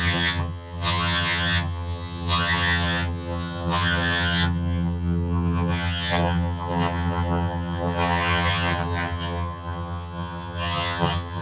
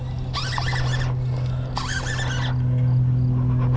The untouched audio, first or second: second